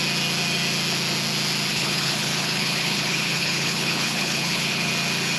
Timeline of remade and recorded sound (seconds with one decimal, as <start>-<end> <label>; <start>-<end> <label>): 0.0-1.7 recorded; 1.7-4.9 remade; 4.9-5.4 recorded

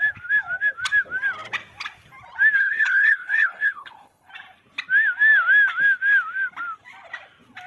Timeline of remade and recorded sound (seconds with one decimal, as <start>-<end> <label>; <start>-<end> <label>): 0.0-2.6 recorded; 2.6-4.3 remade; 4.3-7.7 recorded

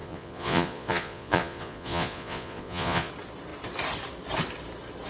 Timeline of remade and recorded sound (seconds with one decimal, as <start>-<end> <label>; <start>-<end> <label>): 0.0-3.1 remade; 3.1-5.1 recorded